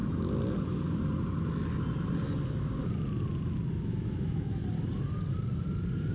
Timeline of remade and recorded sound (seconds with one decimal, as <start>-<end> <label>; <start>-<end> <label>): 0.0-3.7 recorded; 3.7-4.6 remade; 4.6-6.1 recorded